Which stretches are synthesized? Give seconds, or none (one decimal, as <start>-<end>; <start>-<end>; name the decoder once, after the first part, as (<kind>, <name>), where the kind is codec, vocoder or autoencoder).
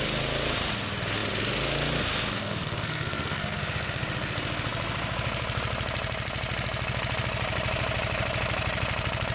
2.4-3.6 (codec, SNAC)